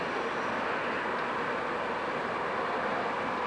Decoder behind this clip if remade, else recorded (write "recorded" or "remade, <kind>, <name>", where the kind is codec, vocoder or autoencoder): recorded